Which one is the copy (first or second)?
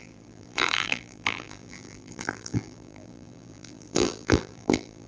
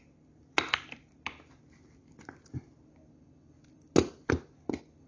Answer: first